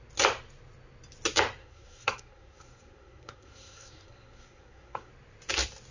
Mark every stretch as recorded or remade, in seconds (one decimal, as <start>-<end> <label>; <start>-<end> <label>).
0.0-1.6 recorded; 1.6-5.1 remade; 5.1-5.9 recorded